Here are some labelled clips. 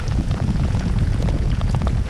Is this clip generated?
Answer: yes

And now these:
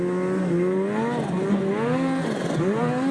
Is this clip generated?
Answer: no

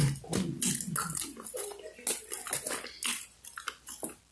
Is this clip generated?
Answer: no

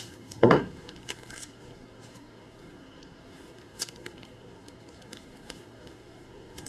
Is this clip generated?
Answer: yes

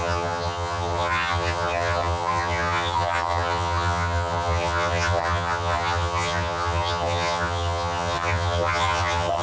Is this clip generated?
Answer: yes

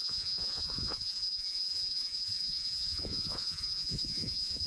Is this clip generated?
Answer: yes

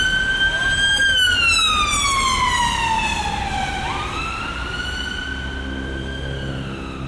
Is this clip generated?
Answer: no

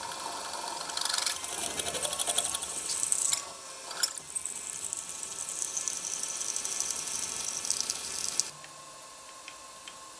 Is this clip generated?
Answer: no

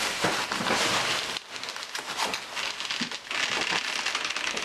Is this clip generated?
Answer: no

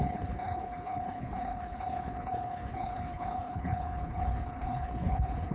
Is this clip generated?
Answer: yes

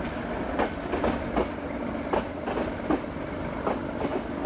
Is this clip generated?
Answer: no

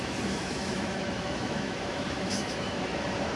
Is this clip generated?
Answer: yes